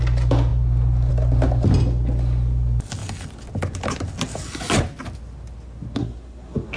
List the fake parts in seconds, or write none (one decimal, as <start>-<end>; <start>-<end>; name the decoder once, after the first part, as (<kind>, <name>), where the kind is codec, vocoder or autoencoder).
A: 6.0-6.8 (codec, SNAC)

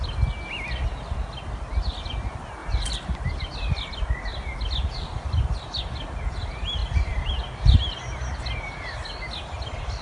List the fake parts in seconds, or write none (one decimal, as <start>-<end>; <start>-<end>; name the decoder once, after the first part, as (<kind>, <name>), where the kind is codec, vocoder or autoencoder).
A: 2.6-3.9 (vocoder, BigVGAN v2); 4.3-5.8; 6.8-7.3

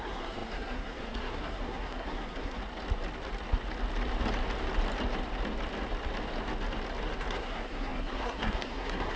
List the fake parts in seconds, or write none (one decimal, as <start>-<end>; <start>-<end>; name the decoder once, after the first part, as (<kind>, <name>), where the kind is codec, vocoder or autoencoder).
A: 0.0-2.6 (codec, SNAC); 7.3-9.2

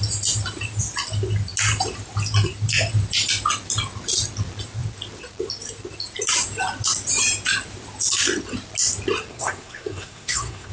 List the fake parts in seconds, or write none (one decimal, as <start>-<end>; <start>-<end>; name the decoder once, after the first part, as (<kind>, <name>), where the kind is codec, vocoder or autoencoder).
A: 9.3-10.7 (codec, SNAC)